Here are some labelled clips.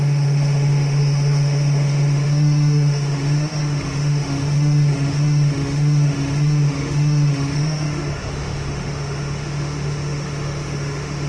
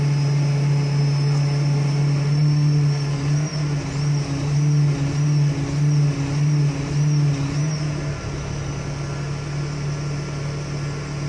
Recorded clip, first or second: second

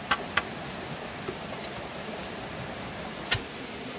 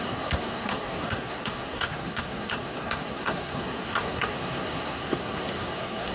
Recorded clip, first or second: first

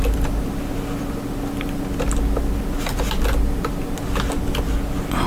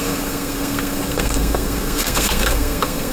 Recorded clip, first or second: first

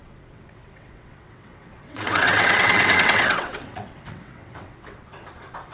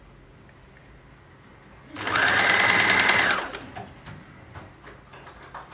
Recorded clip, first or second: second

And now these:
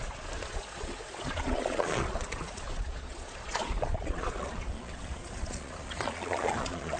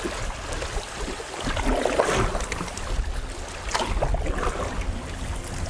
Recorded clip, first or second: second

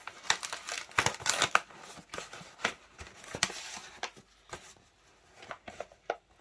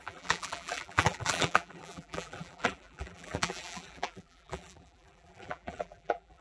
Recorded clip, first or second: first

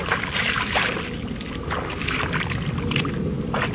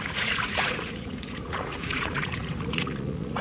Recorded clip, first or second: first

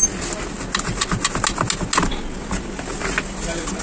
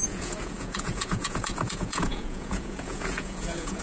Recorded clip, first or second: first